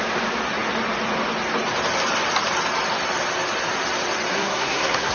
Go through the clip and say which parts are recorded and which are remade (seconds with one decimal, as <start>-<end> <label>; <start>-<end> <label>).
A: 0.0-4.3 recorded; 4.3-5.1 remade